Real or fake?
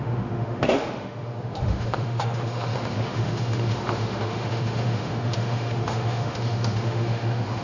fake